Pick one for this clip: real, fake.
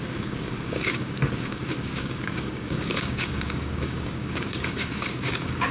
fake